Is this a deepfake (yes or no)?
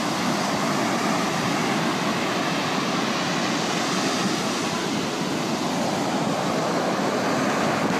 no